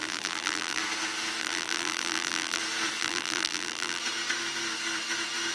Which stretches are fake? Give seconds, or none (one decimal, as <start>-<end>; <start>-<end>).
0.0-0.8; 1.4-2.6; 3.0-4.0